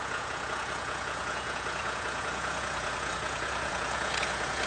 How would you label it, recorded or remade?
remade